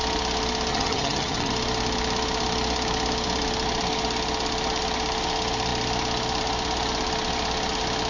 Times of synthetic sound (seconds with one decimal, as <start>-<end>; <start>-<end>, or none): 0.7-1.5